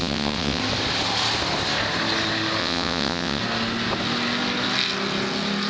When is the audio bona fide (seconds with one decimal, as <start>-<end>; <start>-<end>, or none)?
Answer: 0.6-2.6; 3.4-5.7

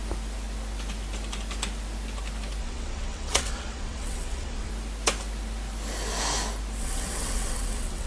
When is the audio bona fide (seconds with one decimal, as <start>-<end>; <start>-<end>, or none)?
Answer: 0.0-2.6; 4.7-6.8

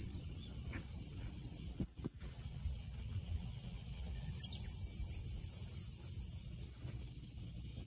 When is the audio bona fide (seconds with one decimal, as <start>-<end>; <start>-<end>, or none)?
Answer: 4.3-6.4

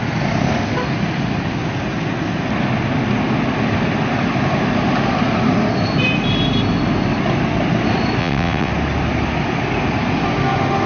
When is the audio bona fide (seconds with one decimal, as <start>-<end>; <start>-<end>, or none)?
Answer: 0.0-8.2; 8.7-10.9

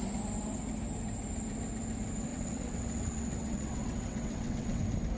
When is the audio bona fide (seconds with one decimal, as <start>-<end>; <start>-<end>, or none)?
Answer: 0.0-2.3; 4.8-5.2

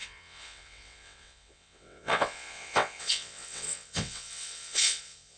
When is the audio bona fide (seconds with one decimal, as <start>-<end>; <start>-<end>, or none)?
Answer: none

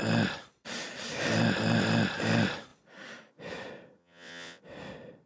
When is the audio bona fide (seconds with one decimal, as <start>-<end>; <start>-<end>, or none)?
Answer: 0.0-4.0; 4.6-5.3

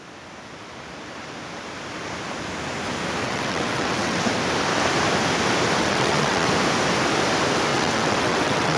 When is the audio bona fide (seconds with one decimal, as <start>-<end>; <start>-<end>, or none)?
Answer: 0.0-3.2; 4.2-5.8; 6.5-7.7